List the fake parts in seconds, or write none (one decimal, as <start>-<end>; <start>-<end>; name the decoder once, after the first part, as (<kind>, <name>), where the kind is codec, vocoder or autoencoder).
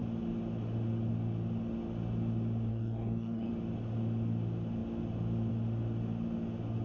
2.7-3.5 (codec, DAC)